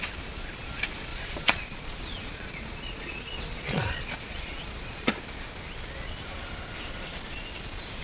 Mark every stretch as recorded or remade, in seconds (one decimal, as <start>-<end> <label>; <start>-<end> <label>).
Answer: 0.0-1.1 recorded; 1.1-5.3 remade; 5.3-8.0 recorded